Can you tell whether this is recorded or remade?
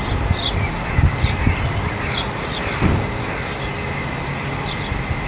recorded